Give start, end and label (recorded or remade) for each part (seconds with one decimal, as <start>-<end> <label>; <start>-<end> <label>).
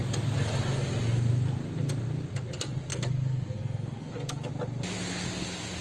0.0-2.9 recorded; 2.9-4.5 remade; 4.5-5.8 recorded